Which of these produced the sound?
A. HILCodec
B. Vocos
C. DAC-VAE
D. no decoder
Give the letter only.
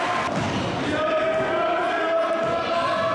D